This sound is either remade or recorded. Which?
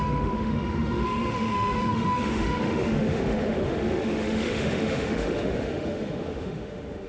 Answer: remade